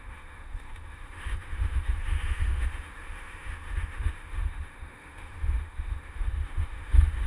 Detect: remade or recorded remade